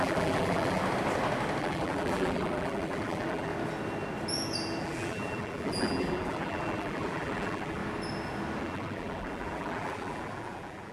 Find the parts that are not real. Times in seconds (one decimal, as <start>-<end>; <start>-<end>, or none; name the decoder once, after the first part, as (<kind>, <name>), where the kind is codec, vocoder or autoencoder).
0.0-0.8 (vocoder, BigVGAN v2); 1.6-3.5; 4.8-7.8; 8.6-10.9